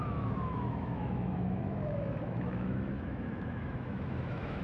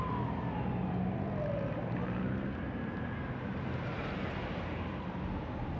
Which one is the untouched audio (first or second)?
second